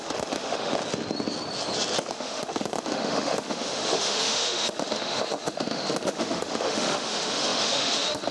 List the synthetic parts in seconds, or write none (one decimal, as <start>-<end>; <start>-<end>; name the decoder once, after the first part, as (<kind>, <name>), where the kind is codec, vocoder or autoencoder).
0.0-0.7 (autoencoder, DAC-VAE); 2.1-8.3

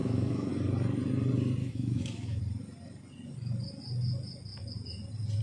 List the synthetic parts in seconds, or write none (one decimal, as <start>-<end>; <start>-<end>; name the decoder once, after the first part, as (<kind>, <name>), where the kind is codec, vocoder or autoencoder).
0.0-0.5 (autoencoder, DAC-VAE); 1.6-2.4

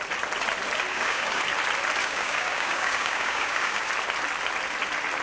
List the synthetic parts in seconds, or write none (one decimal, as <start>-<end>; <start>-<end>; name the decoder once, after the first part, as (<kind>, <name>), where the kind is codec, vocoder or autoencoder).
0.9-1.4 (codec, DAC); 2.0-3.9

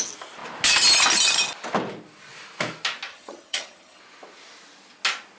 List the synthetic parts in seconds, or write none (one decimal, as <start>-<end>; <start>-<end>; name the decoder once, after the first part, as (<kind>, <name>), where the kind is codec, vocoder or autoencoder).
3.1-4.0 (vocoder, HiFi-GAN)